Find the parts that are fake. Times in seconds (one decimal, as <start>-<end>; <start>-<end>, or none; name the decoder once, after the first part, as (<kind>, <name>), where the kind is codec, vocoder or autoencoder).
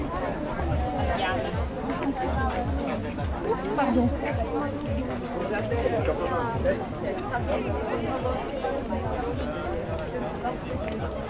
none